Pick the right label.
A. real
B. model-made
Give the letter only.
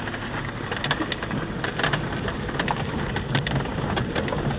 A